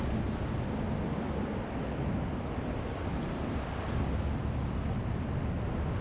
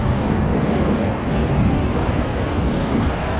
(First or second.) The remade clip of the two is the second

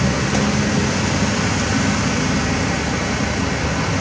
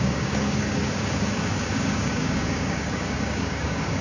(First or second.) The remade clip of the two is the second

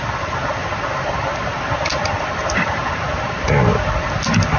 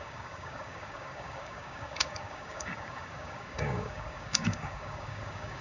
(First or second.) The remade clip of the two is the second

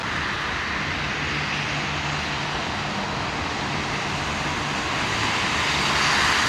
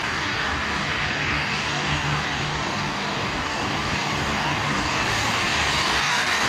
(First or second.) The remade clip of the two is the second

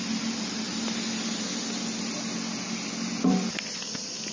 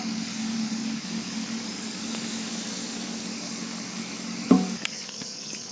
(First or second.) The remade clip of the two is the second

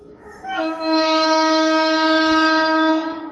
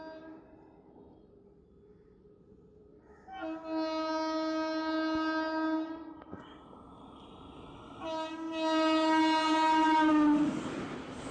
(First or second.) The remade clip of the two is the first